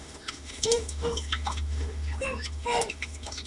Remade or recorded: remade